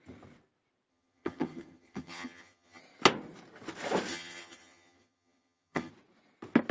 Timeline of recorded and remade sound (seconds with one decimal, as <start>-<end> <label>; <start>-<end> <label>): 0.0-0.9 recorded; 0.9-2.8 remade; 2.8-4.1 recorded; 4.1-5.9 remade; 5.9-6.7 recorded